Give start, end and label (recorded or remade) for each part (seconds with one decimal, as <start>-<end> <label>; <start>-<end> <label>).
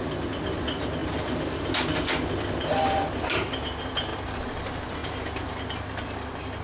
0.0-1.0 recorded; 1.0-1.7 remade; 1.7-5.0 recorded; 5.0-5.5 remade; 5.5-6.6 recorded